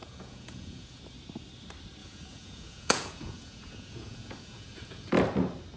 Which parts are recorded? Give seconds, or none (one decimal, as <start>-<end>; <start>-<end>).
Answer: 1.0-2.0; 5.1-5.8